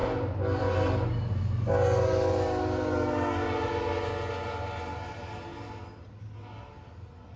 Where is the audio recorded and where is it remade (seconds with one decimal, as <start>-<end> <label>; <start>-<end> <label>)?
0.0-7.4 recorded